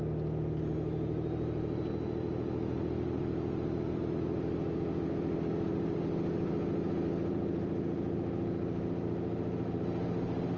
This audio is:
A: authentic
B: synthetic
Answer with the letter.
A